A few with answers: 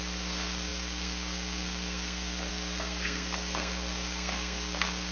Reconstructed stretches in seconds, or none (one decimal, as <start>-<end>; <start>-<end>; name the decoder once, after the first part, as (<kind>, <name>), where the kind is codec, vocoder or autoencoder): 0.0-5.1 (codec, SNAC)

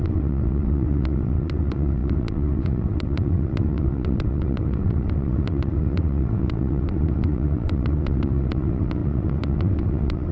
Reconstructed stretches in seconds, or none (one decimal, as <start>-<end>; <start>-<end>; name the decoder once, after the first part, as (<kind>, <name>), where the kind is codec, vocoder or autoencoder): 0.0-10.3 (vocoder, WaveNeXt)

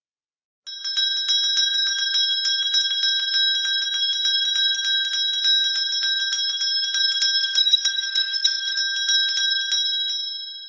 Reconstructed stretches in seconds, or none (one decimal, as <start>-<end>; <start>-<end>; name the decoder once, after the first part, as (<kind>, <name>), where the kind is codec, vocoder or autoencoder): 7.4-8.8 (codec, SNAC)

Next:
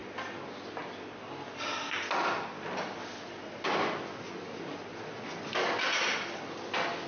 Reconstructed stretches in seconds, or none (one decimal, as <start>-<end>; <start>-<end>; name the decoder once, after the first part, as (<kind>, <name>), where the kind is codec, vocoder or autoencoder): none